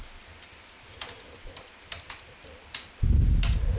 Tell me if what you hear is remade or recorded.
recorded